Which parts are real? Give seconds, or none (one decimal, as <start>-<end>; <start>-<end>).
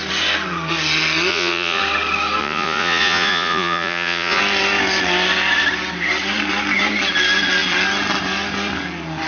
0.0-1.3; 1.8-2.4; 4.4-9.3